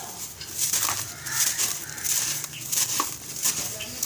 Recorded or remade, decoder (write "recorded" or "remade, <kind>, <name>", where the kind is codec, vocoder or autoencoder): remade, vocoder, BigVGAN v2